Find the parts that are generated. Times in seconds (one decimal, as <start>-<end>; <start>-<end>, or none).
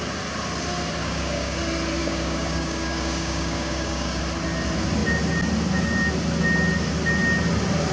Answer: 1.0-1.6; 2.0-4.2